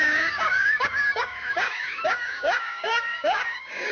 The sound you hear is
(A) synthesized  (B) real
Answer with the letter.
A